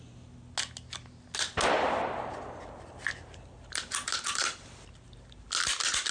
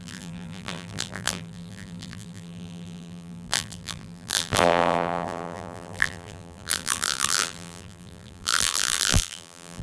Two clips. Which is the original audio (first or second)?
first